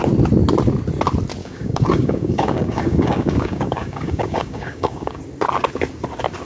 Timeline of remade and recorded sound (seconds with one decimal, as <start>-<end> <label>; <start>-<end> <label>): 0.0-1.4 recorded; 1.4-5.2 remade; 5.2-6.4 recorded